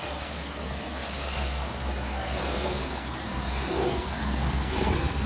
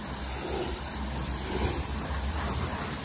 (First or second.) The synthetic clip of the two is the first